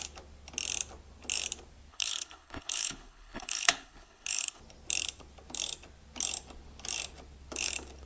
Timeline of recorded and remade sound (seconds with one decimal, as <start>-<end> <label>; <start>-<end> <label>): 0.0-1.9 recorded; 1.9-4.6 remade; 4.6-8.1 recorded